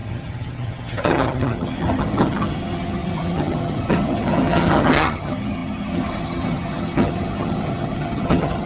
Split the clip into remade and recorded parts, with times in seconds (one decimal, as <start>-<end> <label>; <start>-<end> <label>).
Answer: 0.0-8.7 remade